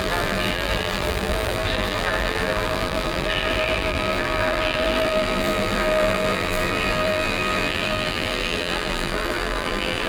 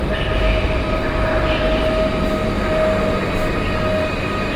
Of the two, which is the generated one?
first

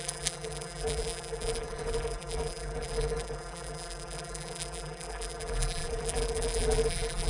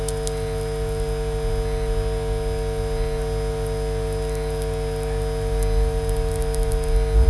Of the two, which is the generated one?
first